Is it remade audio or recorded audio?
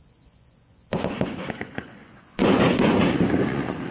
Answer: remade